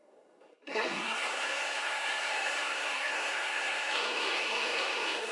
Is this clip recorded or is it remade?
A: remade